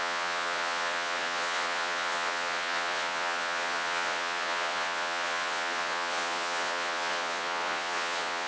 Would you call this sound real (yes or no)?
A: no